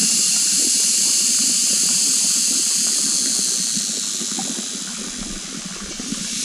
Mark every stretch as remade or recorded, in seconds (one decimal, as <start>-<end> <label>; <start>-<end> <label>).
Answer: 0.0-2.1 remade; 2.1-5.9 recorded; 5.9-6.4 remade